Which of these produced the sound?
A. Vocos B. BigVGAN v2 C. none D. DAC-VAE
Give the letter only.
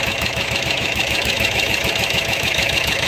D